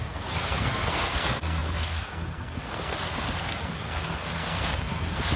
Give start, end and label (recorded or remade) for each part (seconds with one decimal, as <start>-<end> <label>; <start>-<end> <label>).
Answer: 0.0-5.4 remade